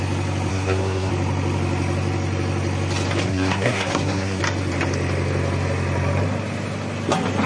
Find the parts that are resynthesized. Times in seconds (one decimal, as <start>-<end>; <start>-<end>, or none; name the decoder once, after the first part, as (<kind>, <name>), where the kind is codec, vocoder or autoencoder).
0.5-1.1 (codec, SNAC); 3.3-4.4